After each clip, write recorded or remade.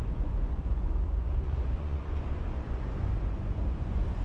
remade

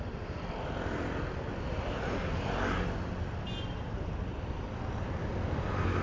recorded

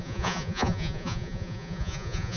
remade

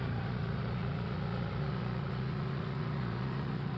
remade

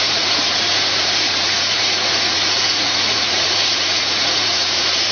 remade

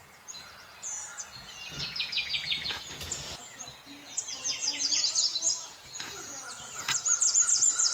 remade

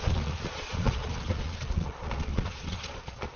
remade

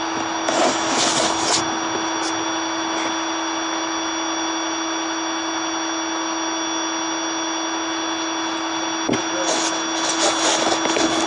recorded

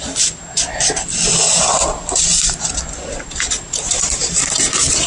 recorded